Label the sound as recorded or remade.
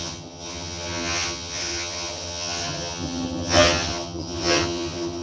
remade